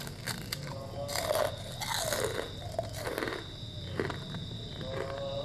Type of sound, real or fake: real